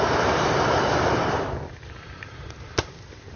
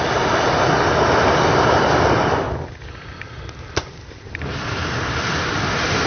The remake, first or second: first